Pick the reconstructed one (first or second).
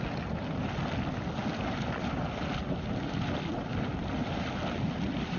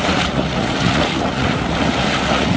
second